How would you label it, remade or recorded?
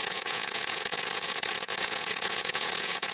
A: remade